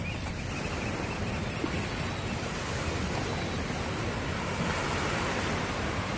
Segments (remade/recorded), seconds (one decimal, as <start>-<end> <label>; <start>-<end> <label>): 0.0-6.2 recorded